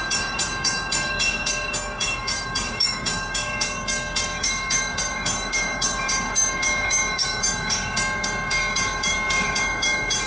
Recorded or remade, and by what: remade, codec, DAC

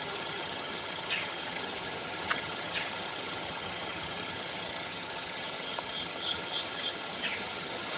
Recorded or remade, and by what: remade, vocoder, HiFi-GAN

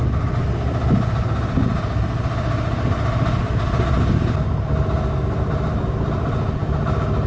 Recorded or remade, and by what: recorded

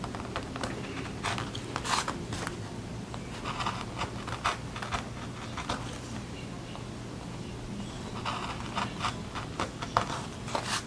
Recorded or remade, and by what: recorded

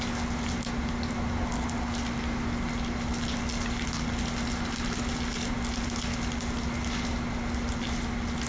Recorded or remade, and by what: recorded